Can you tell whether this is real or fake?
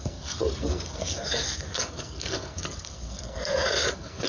fake